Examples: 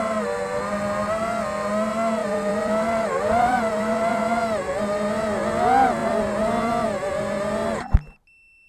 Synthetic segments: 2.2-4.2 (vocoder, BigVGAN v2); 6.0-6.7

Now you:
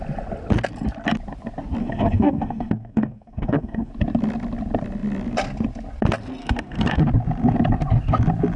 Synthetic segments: 1.8-3.9 (codec, SNAC); 6.4-7.0

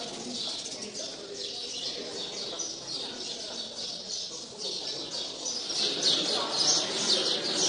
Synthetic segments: 1.1-5.7 (vocoder, BigVGAN v2)

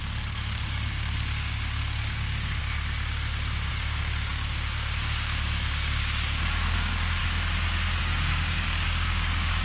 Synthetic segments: 0.0-2.6 (codec, DAC); 3.7-7.2; 8.0-9.6

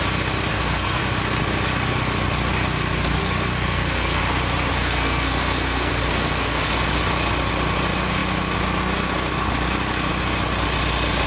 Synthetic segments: 0.5-1.0 (codec, SNAC); 3.2-4.2; 4.7-6.7

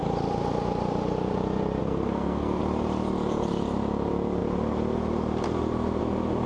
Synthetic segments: 1.8-2.6 (codec, SNAC)